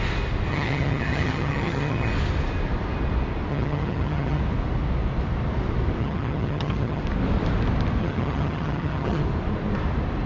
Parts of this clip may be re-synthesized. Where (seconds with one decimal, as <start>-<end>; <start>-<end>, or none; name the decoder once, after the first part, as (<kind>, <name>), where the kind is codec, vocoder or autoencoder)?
0.5-2.1 (vocoder, HiFi-GAN); 3.5-4.4; 6.0-7.0; 8.0-9.2